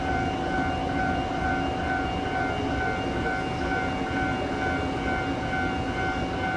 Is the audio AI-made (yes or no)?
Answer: no